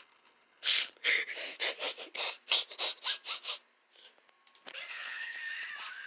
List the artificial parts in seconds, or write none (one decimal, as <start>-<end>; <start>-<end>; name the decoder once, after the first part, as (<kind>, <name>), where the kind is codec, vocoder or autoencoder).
0.0-1.2 (codec, HILCodec); 4.9-5.4